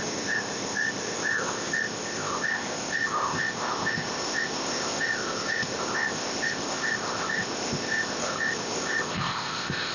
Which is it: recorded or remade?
remade